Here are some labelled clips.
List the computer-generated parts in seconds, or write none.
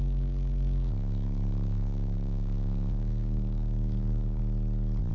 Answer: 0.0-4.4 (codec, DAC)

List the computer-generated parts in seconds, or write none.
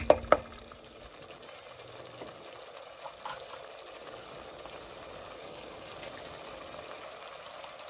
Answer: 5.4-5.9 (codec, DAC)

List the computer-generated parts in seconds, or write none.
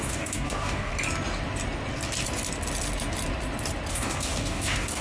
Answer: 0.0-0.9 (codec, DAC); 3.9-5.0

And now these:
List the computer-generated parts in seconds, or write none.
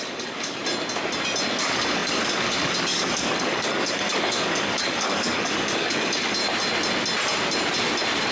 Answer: 0.0-0.6 (codec, DAC); 1.6-6.4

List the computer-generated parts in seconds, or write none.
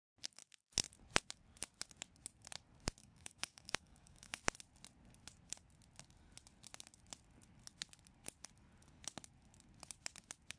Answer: 3.0-4.4 (codec, DAC)